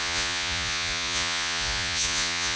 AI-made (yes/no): yes